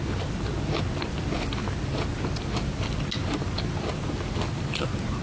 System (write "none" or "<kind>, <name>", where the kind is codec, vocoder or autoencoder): none